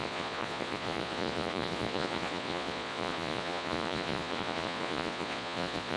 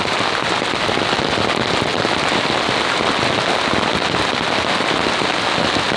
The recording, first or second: second